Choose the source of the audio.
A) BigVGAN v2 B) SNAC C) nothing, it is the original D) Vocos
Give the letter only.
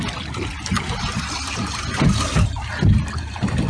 C